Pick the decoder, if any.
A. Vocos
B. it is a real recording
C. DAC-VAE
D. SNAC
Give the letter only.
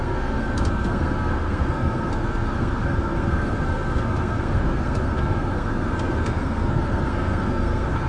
D